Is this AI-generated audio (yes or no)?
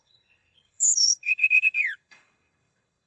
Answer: yes